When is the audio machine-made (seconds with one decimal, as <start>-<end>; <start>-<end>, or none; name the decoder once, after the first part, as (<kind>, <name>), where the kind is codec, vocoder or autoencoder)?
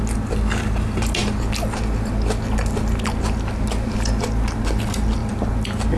none